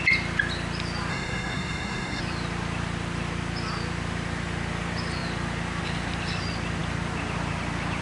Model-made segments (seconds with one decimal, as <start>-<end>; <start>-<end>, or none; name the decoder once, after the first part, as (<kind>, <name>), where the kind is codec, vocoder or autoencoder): 1.1-2.2 (codec, SNAC)

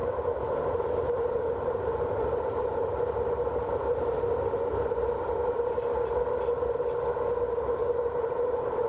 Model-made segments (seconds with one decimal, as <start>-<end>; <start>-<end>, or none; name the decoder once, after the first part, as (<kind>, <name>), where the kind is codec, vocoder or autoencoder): 0.0-4.2 (vocoder, BigVGAN v2); 5.4-6.2; 7.8-8.9